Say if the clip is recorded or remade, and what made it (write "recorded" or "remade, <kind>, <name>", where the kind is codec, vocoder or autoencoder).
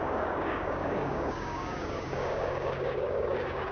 remade, codec, DAC